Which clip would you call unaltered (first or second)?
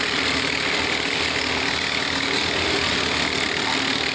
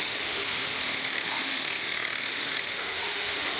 first